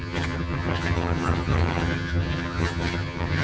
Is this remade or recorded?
remade